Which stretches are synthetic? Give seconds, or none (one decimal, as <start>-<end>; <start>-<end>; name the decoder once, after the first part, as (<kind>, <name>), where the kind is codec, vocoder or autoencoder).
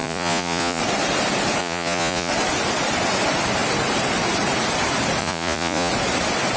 0.0-0.8 (vocoder, Vocos); 1.6-2.3; 5.2-5.9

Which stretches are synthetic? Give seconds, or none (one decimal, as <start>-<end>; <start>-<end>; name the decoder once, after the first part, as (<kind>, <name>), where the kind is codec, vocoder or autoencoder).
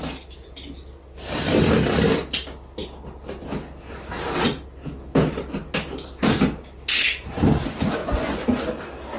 8.0-8.6 (vocoder, Vocos)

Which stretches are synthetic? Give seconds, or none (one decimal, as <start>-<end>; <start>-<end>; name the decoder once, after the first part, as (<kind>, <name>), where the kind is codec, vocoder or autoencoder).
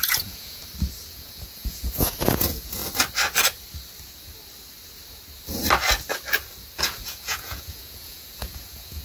0.0-0.6 (vocoder, Vocos); 1.1-2.8; 6.8-9.0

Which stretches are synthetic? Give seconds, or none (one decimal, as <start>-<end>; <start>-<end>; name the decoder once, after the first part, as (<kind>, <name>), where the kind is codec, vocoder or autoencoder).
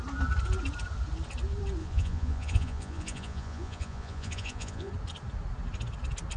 1.8-4.9 (vocoder, Vocos)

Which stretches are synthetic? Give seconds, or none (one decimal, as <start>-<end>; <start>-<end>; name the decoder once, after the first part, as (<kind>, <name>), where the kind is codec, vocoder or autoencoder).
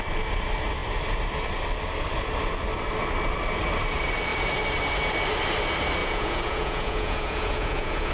6.0-8.1 (vocoder, Vocos)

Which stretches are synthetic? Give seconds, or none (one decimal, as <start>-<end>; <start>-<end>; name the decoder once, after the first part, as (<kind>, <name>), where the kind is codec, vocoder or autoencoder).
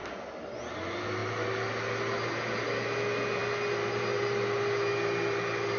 none